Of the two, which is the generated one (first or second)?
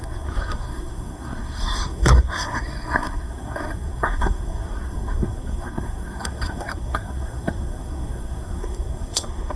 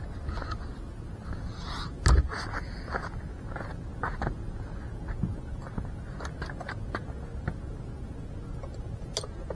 first